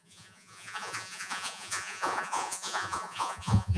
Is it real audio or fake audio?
fake